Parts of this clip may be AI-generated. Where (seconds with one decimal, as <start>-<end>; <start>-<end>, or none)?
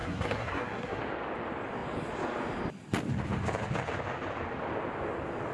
0.0-1.0